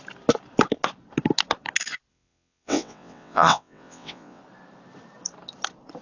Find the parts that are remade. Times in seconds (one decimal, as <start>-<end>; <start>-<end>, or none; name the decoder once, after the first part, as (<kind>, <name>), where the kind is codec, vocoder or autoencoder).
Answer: 2.1-4.4 (vocoder, WaveNeXt)